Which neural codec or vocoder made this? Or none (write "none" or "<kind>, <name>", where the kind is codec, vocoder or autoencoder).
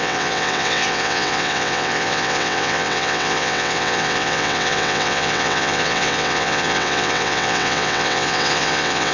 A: vocoder, WaveNeXt